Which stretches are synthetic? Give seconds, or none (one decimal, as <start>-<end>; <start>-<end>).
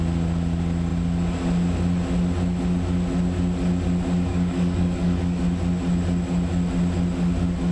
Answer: 4.3-5.4